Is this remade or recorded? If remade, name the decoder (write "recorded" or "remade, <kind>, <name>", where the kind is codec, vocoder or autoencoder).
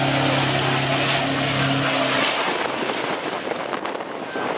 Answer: recorded